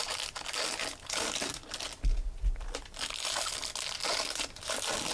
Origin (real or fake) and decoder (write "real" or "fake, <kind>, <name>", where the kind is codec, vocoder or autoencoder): real